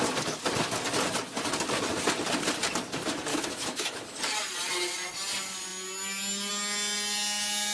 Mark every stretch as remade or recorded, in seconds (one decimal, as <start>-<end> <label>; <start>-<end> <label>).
0.0-3.3 recorded; 3.3-4.2 remade; 4.2-7.7 recorded